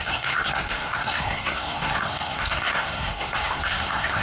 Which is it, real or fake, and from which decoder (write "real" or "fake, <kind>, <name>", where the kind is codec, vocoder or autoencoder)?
fake, codec, SNAC